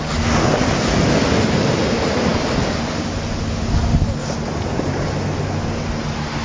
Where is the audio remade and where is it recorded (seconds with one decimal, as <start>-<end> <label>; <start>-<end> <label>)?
0.0-6.4 recorded